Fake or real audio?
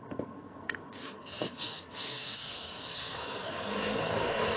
fake